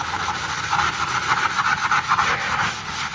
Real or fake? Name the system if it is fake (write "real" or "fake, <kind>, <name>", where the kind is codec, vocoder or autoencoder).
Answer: real